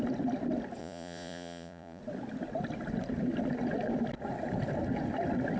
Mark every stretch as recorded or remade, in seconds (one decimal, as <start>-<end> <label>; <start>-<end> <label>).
0.0-0.8 recorded; 0.8-2.0 remade; 2.0-5.6 recorded